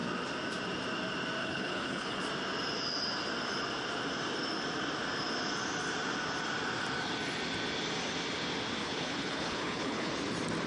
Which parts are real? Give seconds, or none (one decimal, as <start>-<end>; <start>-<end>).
0.0-1.4; 2.2-8.8; 10.1-10.7